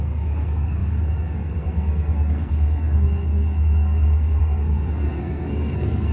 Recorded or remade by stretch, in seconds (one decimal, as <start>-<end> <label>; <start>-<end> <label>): 0.0-6.1 remade